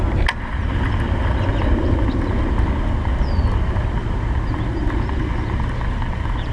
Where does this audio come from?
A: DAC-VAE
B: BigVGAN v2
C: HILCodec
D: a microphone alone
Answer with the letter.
D